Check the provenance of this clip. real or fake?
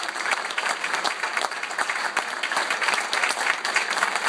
fake